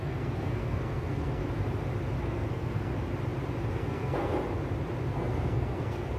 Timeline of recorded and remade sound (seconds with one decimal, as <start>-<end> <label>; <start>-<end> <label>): 0.0-1.4 remade; 1.4-2.2 recorded; 2.2-2.9 remade; 2.9-3.7 recorded; 3.7-4.3 remade; 4.3-5.1 recorded; 5.1-6.2 remade